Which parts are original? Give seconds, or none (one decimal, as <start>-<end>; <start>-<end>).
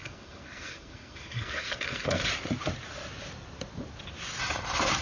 2.3-5.0